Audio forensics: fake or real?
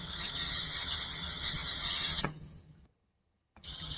fake